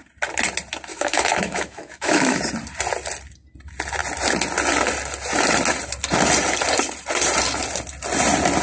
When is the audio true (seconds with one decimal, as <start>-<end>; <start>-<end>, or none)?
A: 0.0-0.9; 2.4-8.6